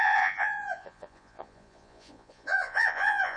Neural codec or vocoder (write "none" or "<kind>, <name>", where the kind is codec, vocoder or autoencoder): vocoder, Vocos